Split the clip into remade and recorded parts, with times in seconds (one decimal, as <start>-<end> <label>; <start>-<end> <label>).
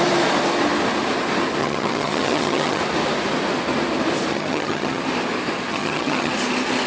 0.0-1.6 recorded; 1.6-2.8 remade; 2.8-4.3 recorded; 4.3-5.0 remade; 5.0-5.7 recorded; 5.7-6.3 remade; 6.3-6.9 recorded